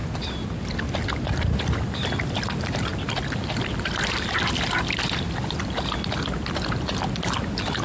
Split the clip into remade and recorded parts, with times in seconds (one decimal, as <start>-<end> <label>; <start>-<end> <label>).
0.0-7.8 recorded